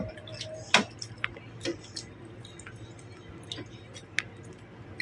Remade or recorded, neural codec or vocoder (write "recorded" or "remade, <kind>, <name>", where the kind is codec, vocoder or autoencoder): recorded